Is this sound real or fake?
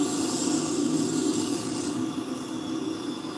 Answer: real